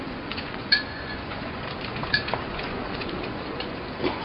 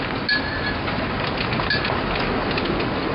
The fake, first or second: first